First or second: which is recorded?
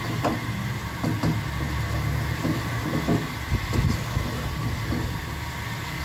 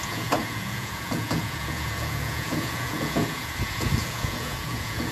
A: first